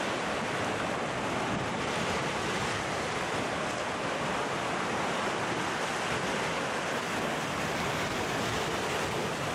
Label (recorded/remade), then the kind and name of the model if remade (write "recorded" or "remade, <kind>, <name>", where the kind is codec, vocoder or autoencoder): recorded